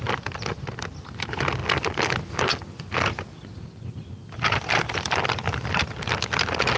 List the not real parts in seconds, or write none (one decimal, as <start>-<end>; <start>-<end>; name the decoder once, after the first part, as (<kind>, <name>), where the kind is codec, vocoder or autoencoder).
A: none